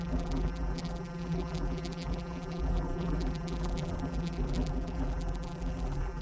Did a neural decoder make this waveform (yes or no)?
yes